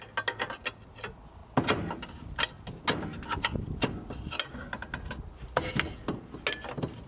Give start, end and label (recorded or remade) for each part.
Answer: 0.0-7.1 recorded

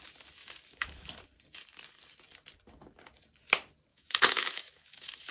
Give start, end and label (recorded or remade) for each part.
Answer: 0.0-0.4 recorded; 0.4-1.1 remade; 1.1-3.9 recorded; 3.9-5.3 remade

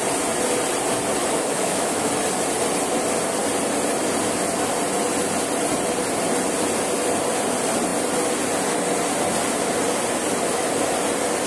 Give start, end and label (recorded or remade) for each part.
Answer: 0.0-1.2 recorded; 1.2-2.1 remade; 2.1-11.5 recorded

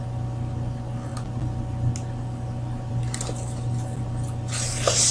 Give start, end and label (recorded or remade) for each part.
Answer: 0.0-5.1 recorded

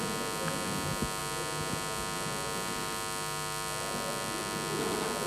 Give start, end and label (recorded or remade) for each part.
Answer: 0.0-5.3 recorded